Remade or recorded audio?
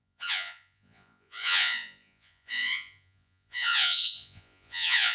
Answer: remade